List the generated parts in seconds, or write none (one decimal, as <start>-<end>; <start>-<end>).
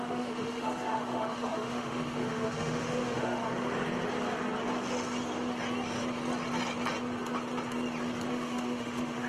0.0-3.4; 8.3-9.3